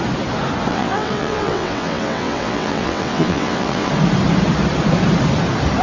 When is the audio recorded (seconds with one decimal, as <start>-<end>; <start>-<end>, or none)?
0.0-0.7; 3.9-5.8